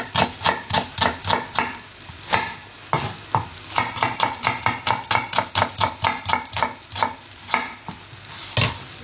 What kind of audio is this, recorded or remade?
recorded